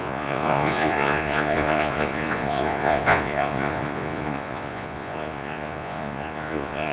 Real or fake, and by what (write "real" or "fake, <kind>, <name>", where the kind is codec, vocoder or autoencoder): fake, vocoder, Vocos